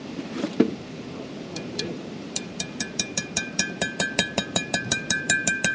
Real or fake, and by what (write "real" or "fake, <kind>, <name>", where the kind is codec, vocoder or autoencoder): fake, vocoder, BigVGAN v2